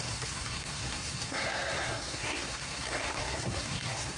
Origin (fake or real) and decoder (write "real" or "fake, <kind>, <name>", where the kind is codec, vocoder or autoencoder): fake, codec, SNAC